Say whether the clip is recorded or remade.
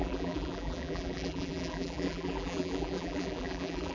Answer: remade